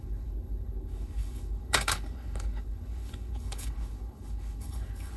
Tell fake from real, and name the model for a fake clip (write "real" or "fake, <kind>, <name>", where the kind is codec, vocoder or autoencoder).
fake, codec, HILCodec